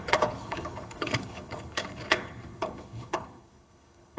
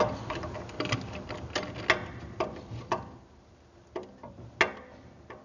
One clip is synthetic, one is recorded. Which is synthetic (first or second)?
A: first